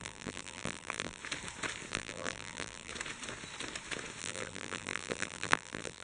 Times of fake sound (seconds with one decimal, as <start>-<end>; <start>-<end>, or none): 0.0-1.2; 1.9-2.9; 4.2-6.0